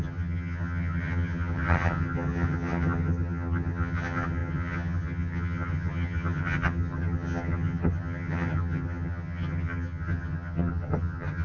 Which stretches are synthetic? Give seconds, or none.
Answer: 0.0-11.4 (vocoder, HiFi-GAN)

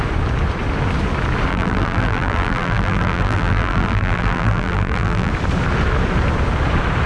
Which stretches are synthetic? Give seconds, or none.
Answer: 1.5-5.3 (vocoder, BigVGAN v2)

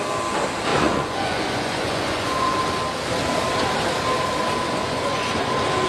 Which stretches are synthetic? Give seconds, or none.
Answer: 0.7-2.6 (vocoder, Vocos); 4.8-5.5

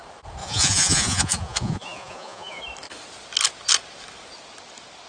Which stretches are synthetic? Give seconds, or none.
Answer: 0.4-2.6 (vocoder, Vocos)

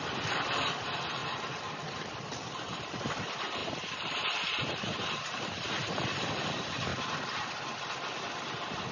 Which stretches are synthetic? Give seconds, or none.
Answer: 0.0-1.2 (vocoder, BigVGAN v2); 2.0-6.9; 7.4-8.9